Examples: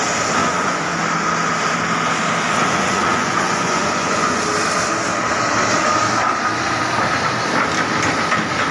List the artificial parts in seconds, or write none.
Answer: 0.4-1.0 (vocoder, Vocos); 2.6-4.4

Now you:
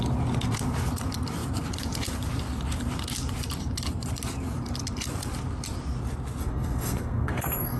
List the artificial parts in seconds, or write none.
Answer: 6.4-7.8 (codec, SNAC)

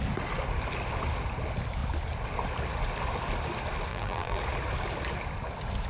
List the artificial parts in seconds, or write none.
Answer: 3.9-4.4 (vocoder, BigVGAN v2)

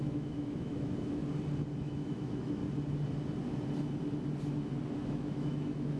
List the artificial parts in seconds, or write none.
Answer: 0.0-1.2 (autoencoder, DAC-VAE); 1.8-2.6; 5.1-6.0

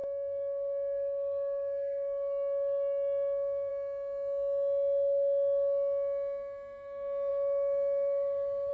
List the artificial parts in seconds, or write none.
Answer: 0.0-3.7 (codec, DAC); 7.3-8.7

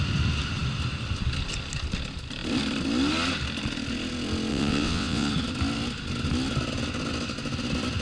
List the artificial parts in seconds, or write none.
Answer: 4.5-5.3 (vocoder, WaveNeXt)

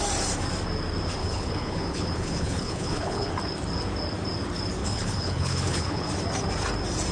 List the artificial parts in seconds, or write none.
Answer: 1.2-3.3 (codec, HILCodec); 4.8-6.1

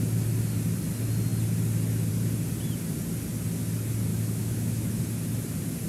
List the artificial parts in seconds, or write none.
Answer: 4.1-5.0 (autoencoder, DAC-VAE)